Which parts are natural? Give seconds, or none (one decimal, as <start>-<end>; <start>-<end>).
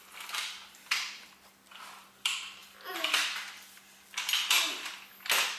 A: 0.0-5.6